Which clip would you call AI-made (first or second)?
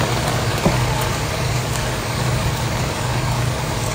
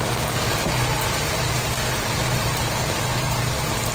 first